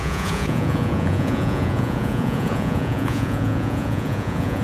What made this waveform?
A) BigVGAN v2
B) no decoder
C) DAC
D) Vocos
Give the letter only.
D